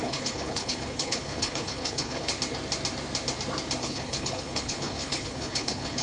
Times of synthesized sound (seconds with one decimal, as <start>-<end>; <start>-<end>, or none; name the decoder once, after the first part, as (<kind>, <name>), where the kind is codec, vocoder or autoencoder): 0.0-2.3 (codec, HILCodec); 3.8-6.0